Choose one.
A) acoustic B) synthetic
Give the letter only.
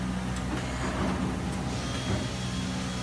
A